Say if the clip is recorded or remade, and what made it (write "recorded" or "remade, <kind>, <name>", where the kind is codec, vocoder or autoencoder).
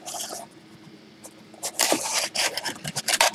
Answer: recorded